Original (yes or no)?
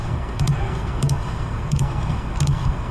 no